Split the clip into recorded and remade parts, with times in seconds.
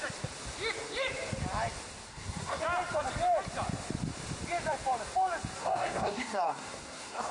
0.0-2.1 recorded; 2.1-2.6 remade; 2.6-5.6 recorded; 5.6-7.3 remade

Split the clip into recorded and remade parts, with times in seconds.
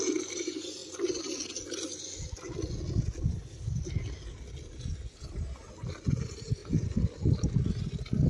0.0-8.3 recorded